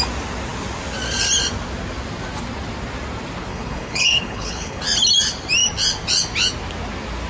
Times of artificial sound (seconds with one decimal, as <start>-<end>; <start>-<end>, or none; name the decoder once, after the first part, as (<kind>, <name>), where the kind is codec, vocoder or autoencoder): 3.5-4.8 (codec, HILCodec)